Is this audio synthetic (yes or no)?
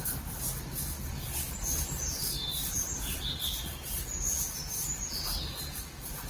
no